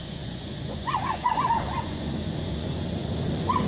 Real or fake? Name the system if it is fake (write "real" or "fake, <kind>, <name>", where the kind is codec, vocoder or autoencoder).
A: fake, vocoder, Vocos